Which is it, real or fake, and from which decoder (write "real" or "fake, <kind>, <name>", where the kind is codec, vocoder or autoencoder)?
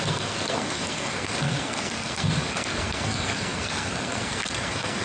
fake, codec, SNAC